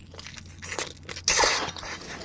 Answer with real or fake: real